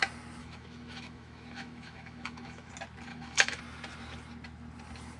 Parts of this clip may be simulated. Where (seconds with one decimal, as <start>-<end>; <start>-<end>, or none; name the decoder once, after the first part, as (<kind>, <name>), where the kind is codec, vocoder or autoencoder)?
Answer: 0.4-2.7 (autoencoder, DAC-VAE); 3.1-3.6